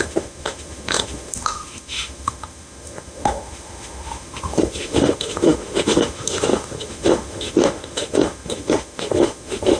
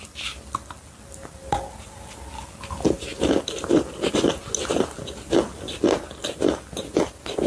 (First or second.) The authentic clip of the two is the second